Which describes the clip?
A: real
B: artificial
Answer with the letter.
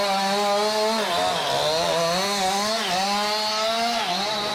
A